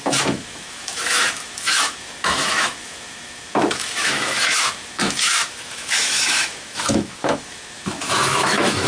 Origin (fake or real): fake